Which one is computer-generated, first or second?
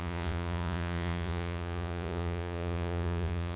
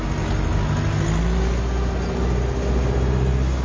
first